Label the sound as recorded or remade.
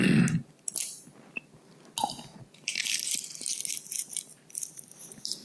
recorded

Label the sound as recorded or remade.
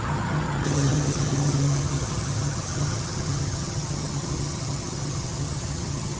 remade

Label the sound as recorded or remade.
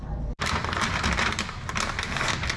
recorded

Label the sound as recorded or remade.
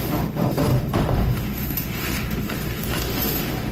remade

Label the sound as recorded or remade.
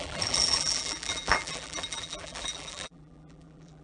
remade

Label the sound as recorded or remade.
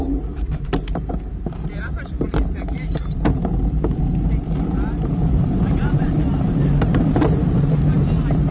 remade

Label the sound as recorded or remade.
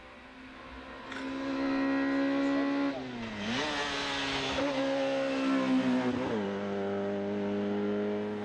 recorded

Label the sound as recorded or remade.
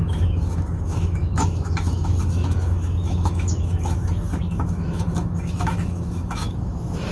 remade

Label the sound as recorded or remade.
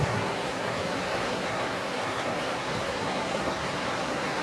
remade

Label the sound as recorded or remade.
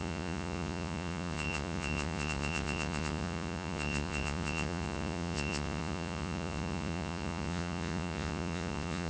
remade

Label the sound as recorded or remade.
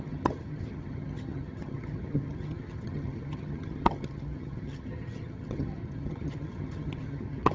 remade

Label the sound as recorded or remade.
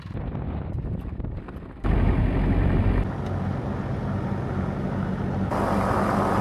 recorded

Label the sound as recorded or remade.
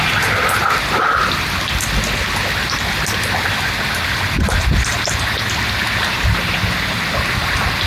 recorded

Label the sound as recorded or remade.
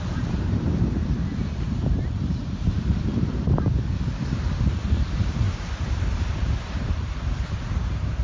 remade